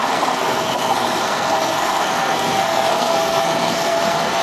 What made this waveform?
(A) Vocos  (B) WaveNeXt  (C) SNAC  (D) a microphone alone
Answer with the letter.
C